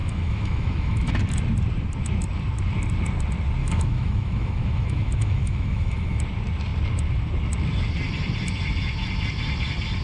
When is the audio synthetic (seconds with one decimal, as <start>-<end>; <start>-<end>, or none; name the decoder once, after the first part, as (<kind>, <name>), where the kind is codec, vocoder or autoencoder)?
0.0-1.1 (autoencoder, DAC-VAE); 3.6-6.2